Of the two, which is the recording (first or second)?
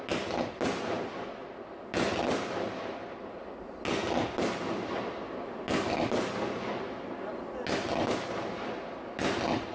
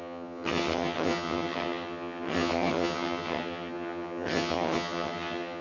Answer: first